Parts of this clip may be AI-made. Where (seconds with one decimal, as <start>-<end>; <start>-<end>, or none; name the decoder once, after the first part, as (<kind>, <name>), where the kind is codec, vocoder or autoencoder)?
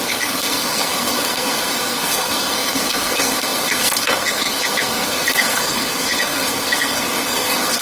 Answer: 0.0-7.8 (codec, SNAC)